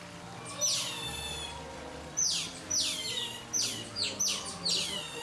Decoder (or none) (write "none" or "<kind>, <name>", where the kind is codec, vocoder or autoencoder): none